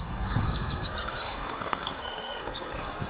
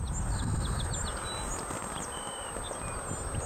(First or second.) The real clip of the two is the second